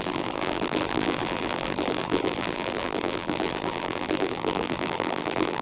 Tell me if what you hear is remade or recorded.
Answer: remade